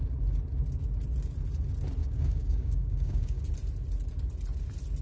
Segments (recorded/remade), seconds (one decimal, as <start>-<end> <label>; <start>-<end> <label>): 0.0-2.0 recorded; 2.0-3.4 remade; 3.4-5.0 recorded